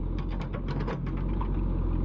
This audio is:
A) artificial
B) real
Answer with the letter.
B